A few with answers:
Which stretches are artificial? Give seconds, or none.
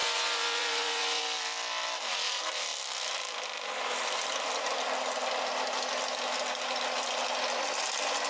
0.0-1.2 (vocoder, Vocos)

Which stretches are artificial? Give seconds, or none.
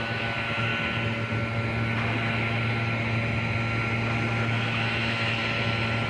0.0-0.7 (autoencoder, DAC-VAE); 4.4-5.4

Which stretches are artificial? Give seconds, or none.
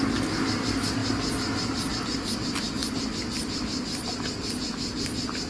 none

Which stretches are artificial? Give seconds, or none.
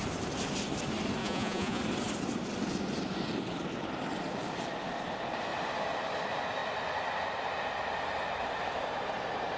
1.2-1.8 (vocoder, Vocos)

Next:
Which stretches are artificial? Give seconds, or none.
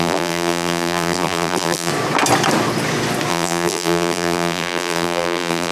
0.0-1.9 (vocoder, BigVGAN v2); 3.3-5.7